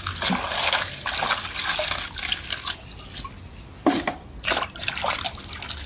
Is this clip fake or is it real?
real